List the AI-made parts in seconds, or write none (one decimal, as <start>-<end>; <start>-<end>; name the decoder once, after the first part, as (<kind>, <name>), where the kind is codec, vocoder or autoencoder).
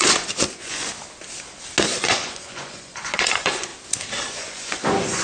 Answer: 0.0-0.9 (vocoder, Vocos); 1.8-3.7; 4.3-5.2